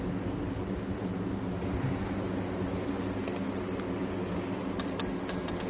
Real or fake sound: real